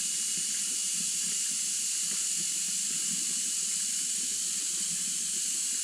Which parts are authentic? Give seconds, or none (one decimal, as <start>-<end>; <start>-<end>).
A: 0.0-0.8; 1.9-4.3; 4.9-5.8